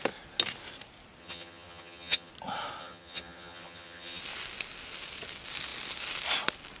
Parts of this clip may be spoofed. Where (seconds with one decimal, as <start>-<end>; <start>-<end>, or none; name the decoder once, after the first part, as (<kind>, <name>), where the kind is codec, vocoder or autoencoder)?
1.2-2.3 (vocoder, HiFi-GAN); 2.8-4.2